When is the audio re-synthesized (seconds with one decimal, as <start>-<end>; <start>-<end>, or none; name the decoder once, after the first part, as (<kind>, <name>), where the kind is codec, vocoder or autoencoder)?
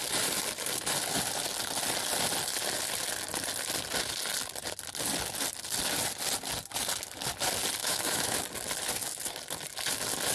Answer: 7.8-8.4 (autoencoder, DAC-VAE)